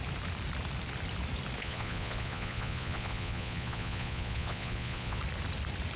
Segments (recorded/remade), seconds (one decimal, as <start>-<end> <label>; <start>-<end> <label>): 0.0-1.6 recorded; 1.6-5.2 remade; 5.2-6.0 recorded